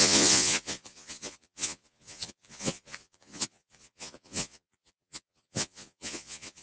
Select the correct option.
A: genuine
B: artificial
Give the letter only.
B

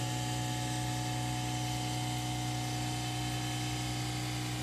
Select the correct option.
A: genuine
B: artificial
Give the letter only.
A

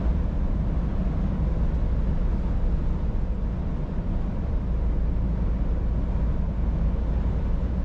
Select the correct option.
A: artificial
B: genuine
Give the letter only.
B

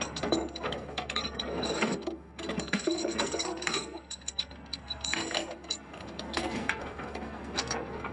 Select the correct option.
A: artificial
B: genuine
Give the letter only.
A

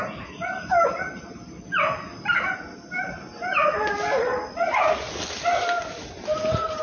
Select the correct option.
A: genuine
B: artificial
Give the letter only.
A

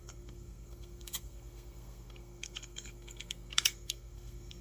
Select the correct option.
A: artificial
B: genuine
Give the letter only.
A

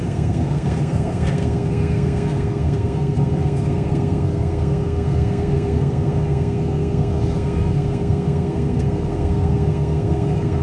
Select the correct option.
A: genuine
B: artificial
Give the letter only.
B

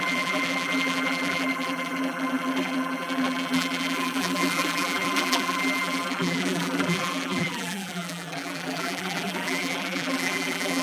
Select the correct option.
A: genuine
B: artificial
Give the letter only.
B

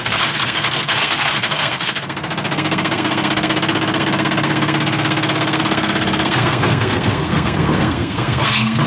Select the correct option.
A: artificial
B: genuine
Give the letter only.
A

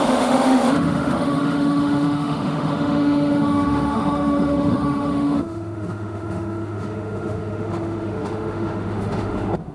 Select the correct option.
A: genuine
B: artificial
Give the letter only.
B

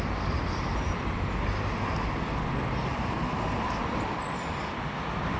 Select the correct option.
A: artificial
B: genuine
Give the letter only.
B